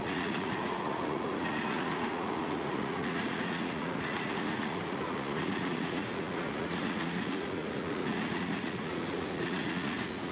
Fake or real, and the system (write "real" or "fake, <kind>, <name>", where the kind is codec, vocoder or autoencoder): fake, vocoder, Vocos